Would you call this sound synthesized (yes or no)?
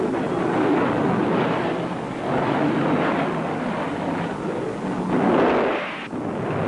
no